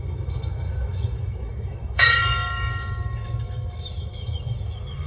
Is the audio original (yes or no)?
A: no